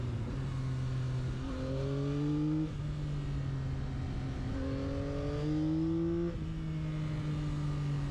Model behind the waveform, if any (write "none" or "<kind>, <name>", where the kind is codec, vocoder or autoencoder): none